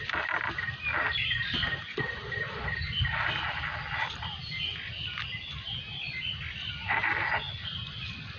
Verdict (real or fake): real